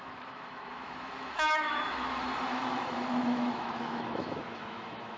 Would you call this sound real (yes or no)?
no